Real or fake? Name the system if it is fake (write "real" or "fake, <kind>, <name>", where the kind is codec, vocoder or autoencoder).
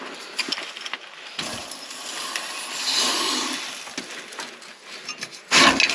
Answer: real